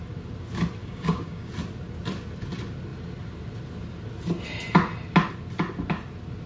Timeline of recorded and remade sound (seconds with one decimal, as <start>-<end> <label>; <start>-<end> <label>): 0.0-0.8 recorded; 0.8-1.5 remade; 1.5-6.5 recorded